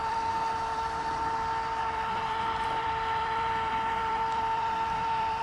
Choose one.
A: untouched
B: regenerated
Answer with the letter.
B